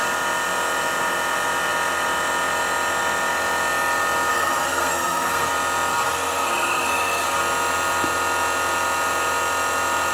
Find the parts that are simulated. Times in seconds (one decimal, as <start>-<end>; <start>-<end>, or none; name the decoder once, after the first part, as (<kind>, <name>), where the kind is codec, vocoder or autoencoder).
4.3-5.5 (codec, SNAC); 5.9-7.4